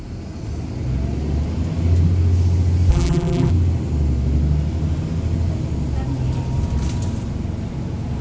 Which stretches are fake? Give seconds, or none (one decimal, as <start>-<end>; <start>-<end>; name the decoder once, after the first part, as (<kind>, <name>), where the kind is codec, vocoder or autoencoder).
2.9-3.5 (vocoder, BigVGAN v2)